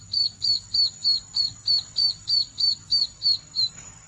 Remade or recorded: recorded